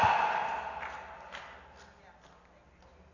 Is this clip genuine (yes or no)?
yes